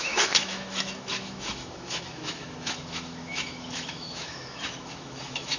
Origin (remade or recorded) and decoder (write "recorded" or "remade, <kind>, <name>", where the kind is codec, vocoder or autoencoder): remade, autoencoder, DAC-VAE